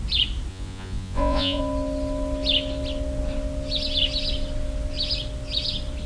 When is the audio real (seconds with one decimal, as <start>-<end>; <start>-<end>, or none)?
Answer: 0.0-0.5; 1.6-6.1